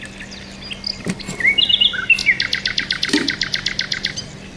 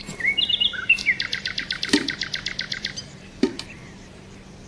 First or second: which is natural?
first